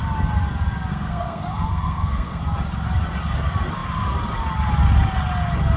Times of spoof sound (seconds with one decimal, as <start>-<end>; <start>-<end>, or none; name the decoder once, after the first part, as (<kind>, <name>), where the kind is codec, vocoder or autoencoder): 0.9-2.4 (codec, SNAC)